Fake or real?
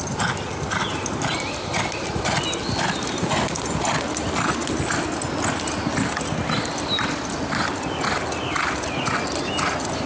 real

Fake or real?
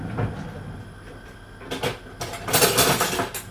real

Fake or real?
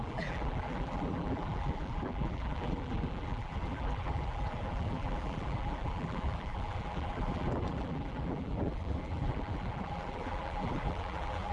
fake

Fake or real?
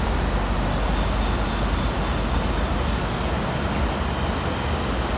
real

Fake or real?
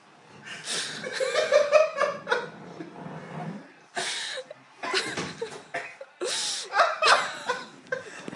real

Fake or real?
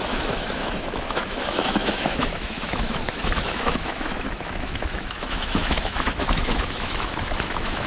fake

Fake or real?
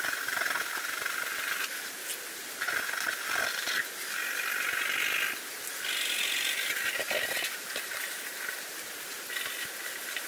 real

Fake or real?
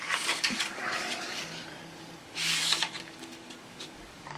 fake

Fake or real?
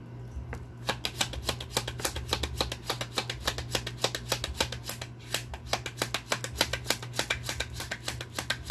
real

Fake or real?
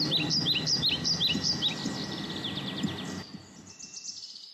real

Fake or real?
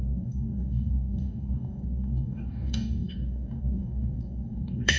fake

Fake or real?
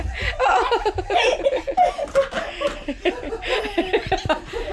real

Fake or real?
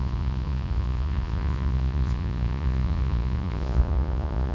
fake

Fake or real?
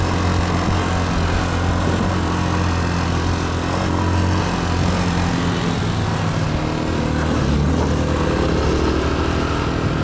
real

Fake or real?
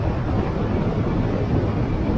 real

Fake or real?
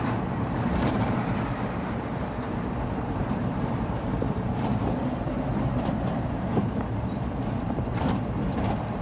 fake